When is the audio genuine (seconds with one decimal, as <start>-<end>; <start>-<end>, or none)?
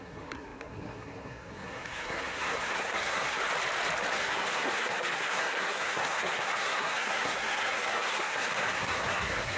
3.4-4.1